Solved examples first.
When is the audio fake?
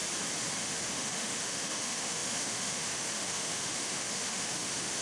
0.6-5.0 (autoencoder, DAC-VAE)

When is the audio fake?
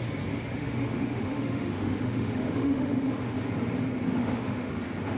0.6-3.4 (autoencoder, DAC-VAE); 4.2-4.7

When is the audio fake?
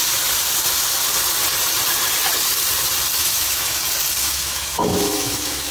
3.2-3.8 (autoencoder, DAC-VAE); 4.2-5.7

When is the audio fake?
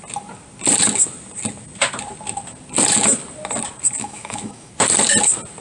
4.0-4.7 (autoencoder, DAC-VAE)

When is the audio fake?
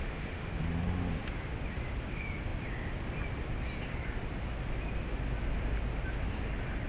0.0-0.6 (autoencoder, DAC-VAE)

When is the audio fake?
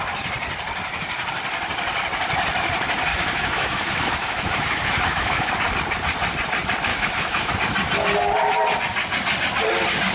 3.1-5.5 (autoencoder, DAC-VAE); 6.9-7.5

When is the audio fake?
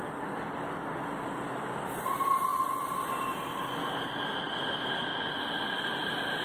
none